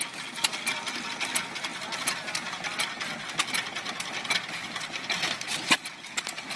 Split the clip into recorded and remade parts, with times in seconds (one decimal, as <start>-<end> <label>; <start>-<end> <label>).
0.0-6.6 recorded